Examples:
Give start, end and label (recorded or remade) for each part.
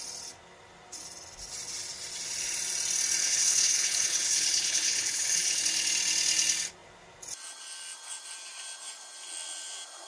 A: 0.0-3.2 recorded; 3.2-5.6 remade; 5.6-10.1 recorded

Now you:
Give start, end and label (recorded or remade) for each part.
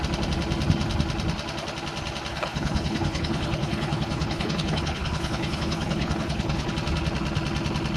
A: 0.0-2.3 recorded; 2.3-6.7 remade; 6.7-8.0 recorded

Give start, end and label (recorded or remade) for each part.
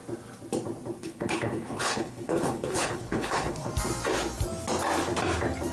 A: 0.0-1.0 recorded; 1.0-3.7 remade; 3.7-5.7 recorded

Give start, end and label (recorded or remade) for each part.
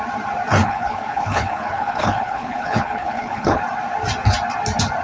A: 0.0-0.6 recorded; 0.6-3.6 remade; 3.6-5.0 recorded